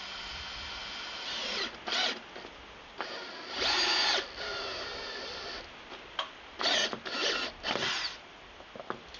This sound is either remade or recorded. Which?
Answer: recorded